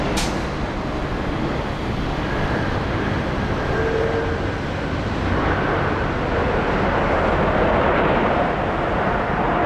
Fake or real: real